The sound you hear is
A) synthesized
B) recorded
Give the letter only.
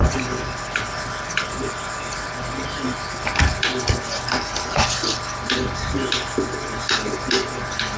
B